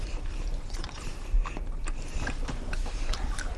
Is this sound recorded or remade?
remade